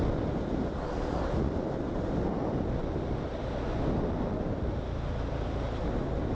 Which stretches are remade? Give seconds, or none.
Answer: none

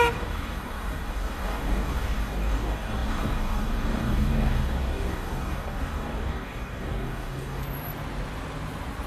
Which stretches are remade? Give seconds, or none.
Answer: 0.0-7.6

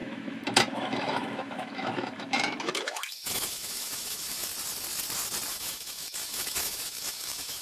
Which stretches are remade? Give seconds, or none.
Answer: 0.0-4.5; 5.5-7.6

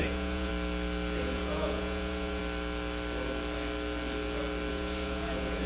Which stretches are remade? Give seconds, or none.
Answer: 0.0-0.5; 1.2-2.4; 4.7-5.7

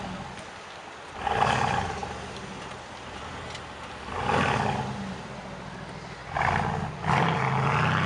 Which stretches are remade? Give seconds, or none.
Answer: none